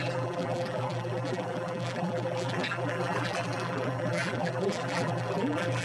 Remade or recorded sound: remade